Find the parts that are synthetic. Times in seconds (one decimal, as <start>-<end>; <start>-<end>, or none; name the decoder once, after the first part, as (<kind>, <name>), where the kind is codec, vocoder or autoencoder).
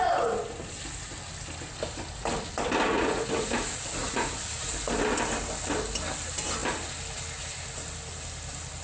2.9-3.5 (vocoder, Vocos); 4.0-4.6